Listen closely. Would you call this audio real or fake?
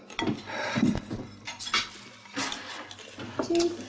real